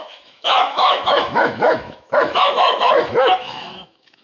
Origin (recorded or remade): remade